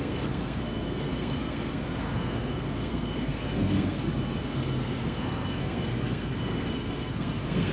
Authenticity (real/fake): fake